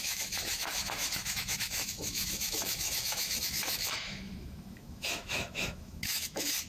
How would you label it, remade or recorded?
remade